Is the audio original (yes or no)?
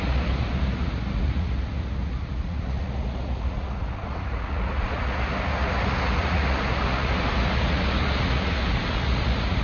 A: no